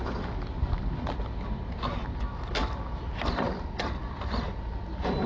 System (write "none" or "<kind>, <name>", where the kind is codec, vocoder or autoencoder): none